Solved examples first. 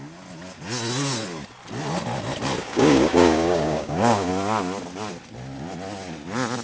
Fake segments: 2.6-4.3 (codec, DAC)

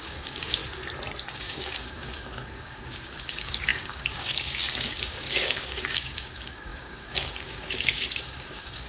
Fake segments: 0.0-0.6 (codec, DAC); 1.3-8.9